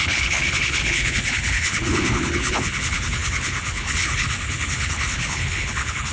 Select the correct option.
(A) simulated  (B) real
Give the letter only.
A